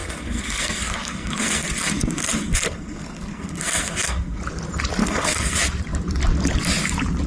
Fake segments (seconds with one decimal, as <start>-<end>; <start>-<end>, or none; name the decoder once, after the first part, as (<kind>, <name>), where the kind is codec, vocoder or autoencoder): 0.0-4.4 (codec, SNAC); 5.0-5.6